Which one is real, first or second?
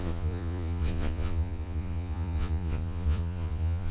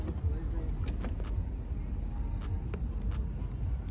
second